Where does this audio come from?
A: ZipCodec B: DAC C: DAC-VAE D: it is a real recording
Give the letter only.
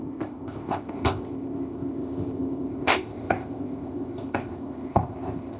A